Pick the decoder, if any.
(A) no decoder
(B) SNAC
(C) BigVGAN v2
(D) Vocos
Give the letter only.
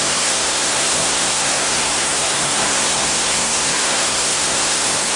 B